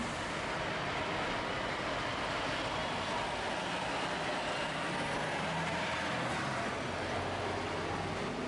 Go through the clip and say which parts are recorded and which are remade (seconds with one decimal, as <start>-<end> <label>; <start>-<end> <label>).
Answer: 0.0-8.5 recorded